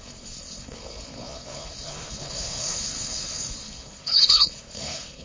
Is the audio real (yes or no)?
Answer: no